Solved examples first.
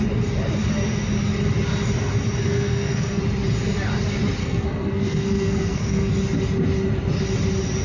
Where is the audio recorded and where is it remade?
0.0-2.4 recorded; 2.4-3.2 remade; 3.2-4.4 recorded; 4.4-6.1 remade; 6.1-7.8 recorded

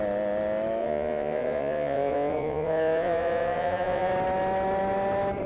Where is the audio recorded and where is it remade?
0.0-0.8 recorded; 0.8-4.1 remade; 4.1-5.5 recorded

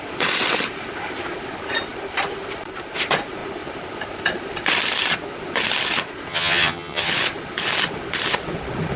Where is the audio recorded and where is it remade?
0.0-6.3 recorded; 6.3-7.1 remade; 7.1-9.0 recorded

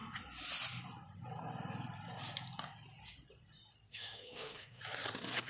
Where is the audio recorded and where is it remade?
0.0-3.9 recorded; 3.9-4.8 remade; 4.8-5.5 recorded

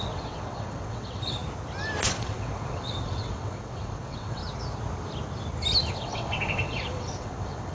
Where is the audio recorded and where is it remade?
0.0-1.4 remade; 1.4-2.1 recorded; 2.1-4.4 remade; 4.4-5.9 recorded; 5.9-7.7 remade

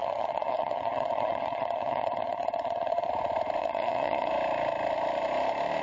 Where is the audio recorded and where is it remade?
0.0-3.1 remade; 3.1-3.6 recorded; 3.6-4.3 remade; 4.3-5.8 recorded

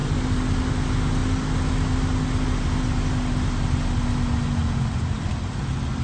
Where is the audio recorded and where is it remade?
0.0-4.6 recorded; 4.6-5.3 remade; 5.3-6.0 recorded

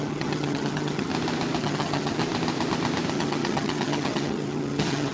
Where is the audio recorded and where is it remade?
0.0-1.1 remade; 1.1-1.6 recorded; 1.6-2.2 remade; 2.2-3.1 recorded; 3.1-5.1 remade